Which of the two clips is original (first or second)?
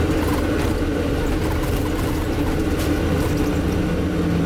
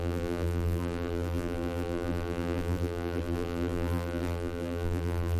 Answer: first